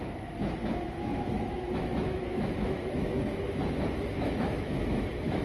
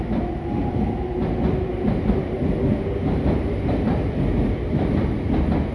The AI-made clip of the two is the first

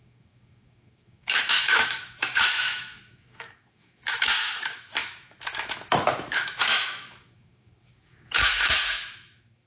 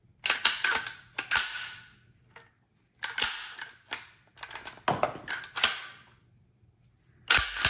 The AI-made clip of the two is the first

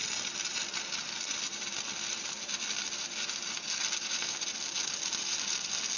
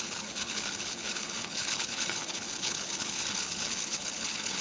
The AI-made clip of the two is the second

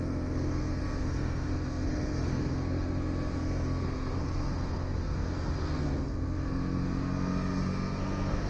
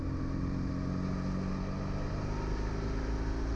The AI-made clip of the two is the first